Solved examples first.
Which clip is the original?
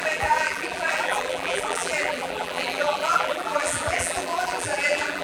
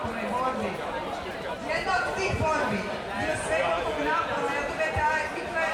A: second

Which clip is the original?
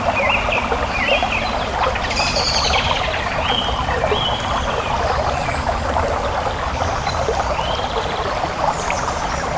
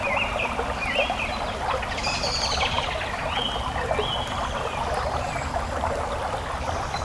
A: second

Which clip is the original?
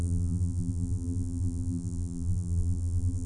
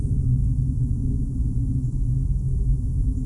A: second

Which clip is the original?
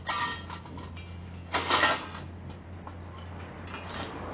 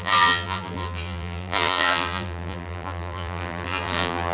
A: first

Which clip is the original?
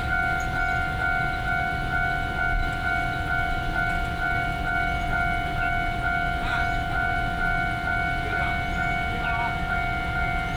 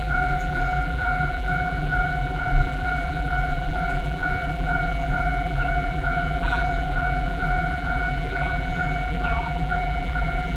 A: first